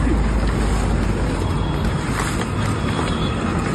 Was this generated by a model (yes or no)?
no